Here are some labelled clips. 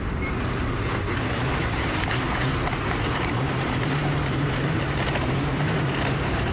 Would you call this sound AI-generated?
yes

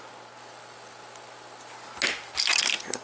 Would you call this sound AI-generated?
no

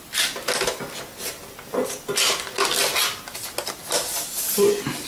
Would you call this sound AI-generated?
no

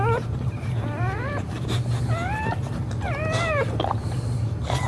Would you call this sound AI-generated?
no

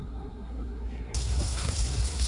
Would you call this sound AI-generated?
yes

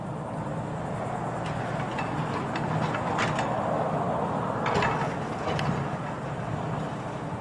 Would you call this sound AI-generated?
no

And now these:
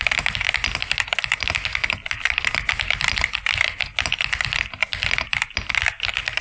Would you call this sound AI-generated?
no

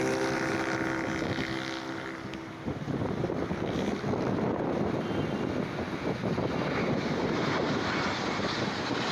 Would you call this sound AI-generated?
no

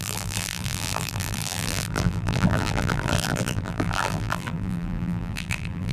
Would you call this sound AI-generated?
yes